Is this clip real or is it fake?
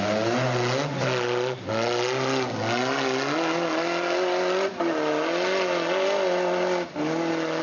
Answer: real